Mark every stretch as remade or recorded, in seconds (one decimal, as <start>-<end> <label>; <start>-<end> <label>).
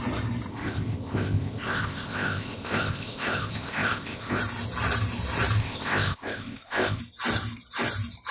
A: 0.0-0.5 recorded; 0.5-4.4 remade; 4.4-5.6 recorded; 5.6-7.0 remade; 7.0-8.3 recorded